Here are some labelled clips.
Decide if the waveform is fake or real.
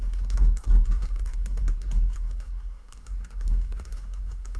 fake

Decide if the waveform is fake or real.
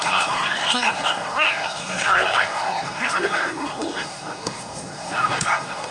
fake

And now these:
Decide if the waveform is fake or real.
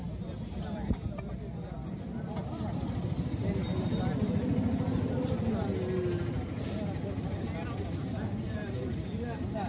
real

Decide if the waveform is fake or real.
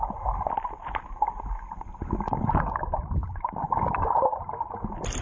real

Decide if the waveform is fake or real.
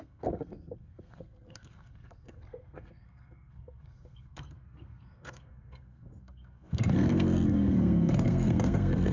fake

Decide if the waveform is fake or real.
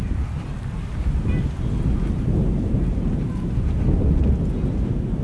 real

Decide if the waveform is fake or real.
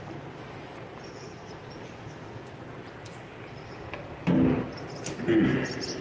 real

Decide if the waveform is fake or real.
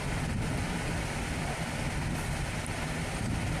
real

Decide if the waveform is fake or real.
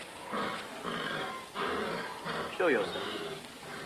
real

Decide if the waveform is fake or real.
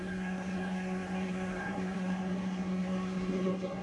fake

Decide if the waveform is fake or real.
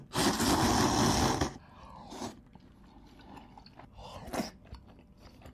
real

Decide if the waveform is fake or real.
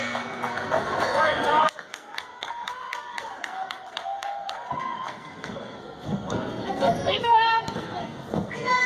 fake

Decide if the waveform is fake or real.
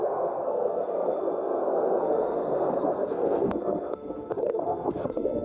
fake